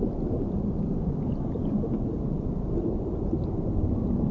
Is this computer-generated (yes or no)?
no